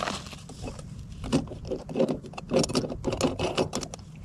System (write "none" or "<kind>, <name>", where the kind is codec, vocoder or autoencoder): none